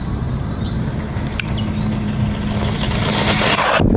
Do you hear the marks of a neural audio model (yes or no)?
no